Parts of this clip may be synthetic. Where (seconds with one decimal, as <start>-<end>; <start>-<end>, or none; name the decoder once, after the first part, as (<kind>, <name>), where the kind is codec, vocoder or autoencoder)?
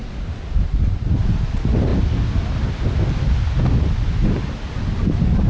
none